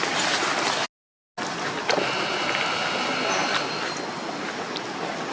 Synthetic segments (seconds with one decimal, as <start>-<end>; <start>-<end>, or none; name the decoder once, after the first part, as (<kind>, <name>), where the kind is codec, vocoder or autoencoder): none